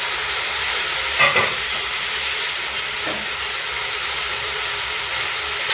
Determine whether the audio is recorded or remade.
recorded